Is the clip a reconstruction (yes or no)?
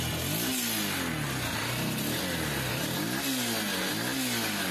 no